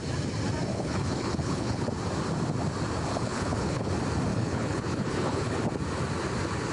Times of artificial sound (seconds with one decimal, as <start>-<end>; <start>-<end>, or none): 0.7-1.9; 3.1-3.9; 4.3-5.6